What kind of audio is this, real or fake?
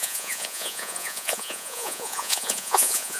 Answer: fake